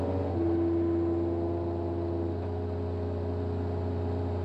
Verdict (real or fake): real